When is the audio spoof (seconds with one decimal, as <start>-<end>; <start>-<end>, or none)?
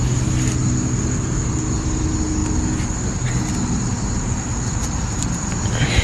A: none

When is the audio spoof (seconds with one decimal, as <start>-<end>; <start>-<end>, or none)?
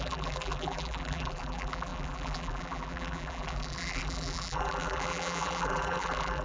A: 0.0-6.4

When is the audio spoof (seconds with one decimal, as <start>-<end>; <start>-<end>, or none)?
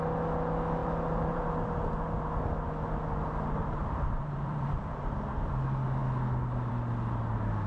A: 0.8-1.4; 3.6-5.5